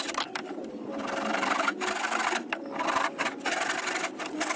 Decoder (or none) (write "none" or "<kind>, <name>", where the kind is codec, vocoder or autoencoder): none